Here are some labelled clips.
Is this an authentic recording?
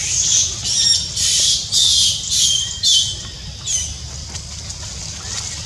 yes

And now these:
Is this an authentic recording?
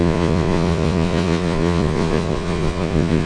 no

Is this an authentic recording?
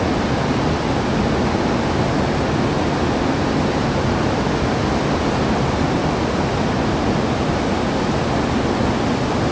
yes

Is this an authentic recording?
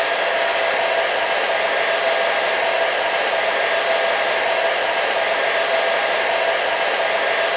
yes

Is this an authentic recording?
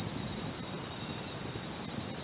yes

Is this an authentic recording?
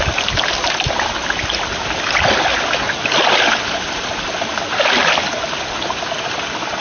yes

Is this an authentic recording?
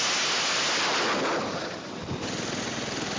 yes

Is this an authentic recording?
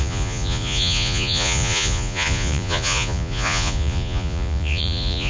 no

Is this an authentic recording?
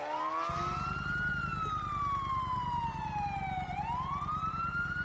yes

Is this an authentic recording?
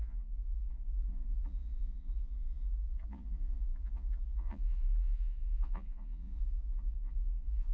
no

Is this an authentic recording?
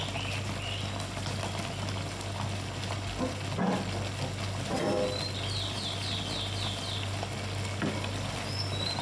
yes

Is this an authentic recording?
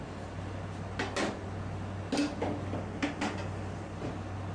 yes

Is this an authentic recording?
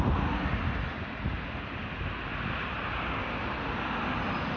yes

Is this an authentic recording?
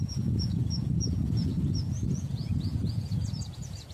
no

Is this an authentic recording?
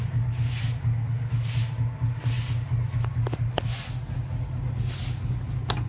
yes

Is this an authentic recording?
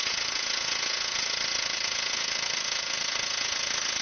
no